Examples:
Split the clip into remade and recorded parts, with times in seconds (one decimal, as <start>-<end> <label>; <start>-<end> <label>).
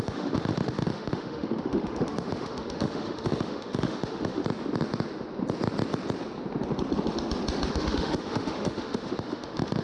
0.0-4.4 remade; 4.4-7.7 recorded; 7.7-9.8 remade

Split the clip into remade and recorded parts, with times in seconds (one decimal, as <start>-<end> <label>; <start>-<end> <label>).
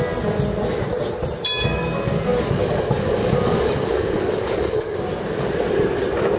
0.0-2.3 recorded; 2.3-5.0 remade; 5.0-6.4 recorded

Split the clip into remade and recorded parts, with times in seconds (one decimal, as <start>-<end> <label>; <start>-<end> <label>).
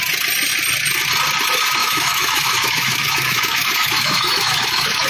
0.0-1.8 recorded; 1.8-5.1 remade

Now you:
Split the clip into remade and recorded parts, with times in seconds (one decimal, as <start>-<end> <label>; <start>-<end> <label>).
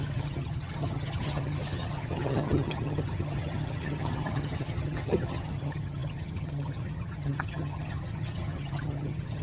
0.0-9.4 remade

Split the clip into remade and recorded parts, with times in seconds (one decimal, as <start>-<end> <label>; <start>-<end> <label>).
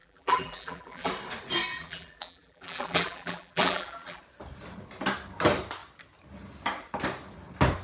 0.0-1.1 remade; 1.1-1.7 recorded; 1.7-4.2 remade; 4.2-7.8 recorded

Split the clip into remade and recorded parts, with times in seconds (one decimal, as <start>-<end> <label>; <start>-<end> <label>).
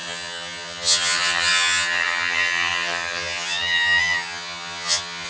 0.0-5.3 remade